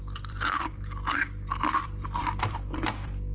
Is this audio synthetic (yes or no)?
yes